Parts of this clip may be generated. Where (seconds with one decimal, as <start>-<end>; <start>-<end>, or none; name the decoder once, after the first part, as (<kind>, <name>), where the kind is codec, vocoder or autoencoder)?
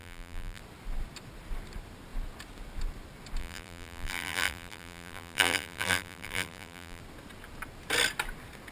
0.0-0.6 (vocoder, BigVGAN v2); 3.4-7.0